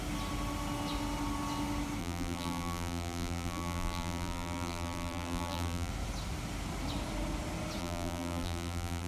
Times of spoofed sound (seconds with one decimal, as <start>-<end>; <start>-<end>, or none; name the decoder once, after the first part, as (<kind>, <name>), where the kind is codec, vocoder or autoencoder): 2.0-5.9 (vocoder, BigVGAN v2); 7.8-9.1